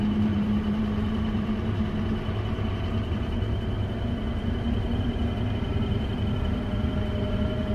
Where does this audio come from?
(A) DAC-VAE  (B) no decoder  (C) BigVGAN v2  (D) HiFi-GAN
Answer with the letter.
C